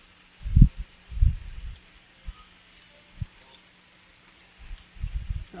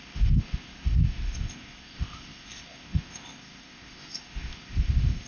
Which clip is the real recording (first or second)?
first